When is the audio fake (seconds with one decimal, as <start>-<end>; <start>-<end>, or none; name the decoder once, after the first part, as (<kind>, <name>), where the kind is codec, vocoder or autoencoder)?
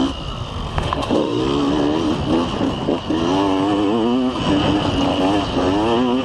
0.7-1.4 (autoencoder, DAC-VAE)